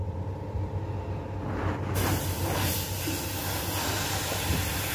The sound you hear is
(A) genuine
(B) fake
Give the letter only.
A